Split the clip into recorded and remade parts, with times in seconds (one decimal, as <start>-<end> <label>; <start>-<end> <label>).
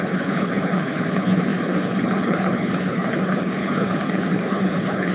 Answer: 0.0-5.1 remade